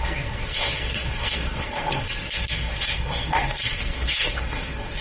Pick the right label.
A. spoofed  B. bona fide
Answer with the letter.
A